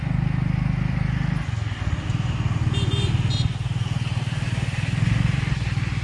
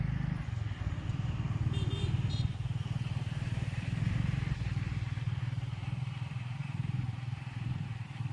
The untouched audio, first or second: first